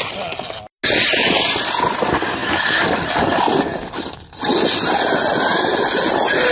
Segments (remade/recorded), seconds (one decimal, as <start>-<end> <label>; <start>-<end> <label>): 0.0-6.5 recorded